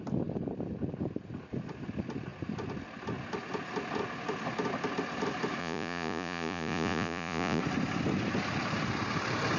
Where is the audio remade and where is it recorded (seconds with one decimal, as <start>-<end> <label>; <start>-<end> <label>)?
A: 0.0-5.6 recorded; 5.6-7.6 remade; 7.6-9.6 recorded